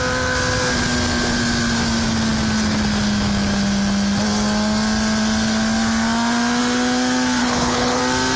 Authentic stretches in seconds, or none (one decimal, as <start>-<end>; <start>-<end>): 0.0-7.4; 8.0-8.4